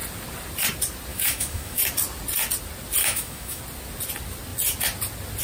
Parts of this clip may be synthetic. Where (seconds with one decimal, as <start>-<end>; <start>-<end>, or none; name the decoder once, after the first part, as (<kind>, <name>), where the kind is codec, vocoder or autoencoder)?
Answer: 1.1-1.8 (autoencoder, DAC-VAE); 3.0-3.6